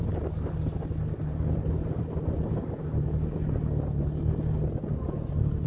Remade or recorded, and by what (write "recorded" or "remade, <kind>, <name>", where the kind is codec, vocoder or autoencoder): recorded